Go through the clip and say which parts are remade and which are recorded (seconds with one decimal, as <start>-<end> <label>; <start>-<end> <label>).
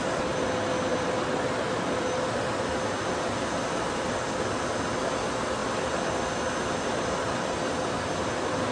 0.0-8.7 recorded